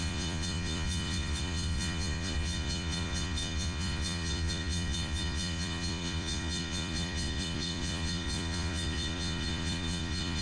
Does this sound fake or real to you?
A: fake